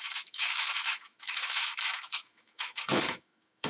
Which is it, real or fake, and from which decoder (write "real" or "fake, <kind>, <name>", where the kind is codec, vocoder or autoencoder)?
fake, autoencoder, DAC-VAE